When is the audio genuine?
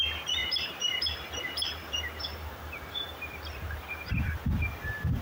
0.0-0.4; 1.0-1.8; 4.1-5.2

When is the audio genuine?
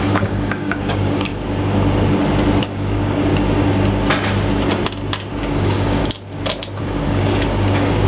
1.3-2.6; 3.3-5.3; 6.0-6.8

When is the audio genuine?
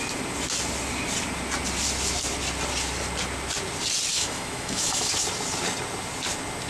0.0-4.1; 5.1-6.7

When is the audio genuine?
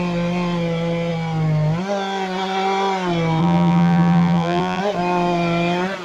0.0-3.4; 4.8-6.0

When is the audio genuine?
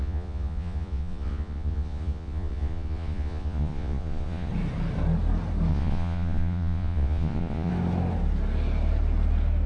4.5-5.7; 7.7-9.7